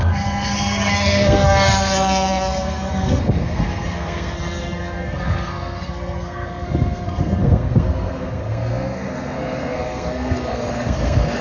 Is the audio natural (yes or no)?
no